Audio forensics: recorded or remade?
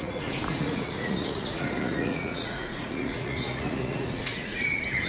remade